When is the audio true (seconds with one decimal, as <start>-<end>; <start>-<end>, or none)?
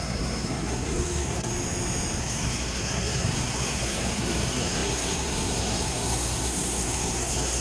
1.5-2.2